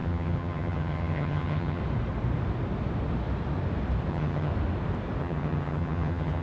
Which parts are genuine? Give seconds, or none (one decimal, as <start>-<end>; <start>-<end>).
1.8-4.1; 4.5-5.2